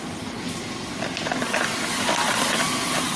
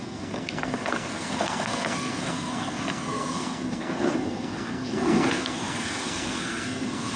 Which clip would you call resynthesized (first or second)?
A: second